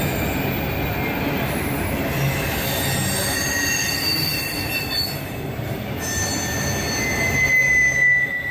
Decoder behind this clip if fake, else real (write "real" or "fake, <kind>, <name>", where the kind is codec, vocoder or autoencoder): real